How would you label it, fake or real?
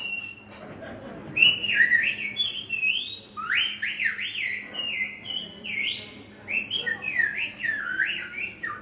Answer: real